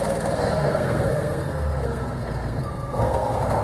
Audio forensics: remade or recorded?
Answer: remade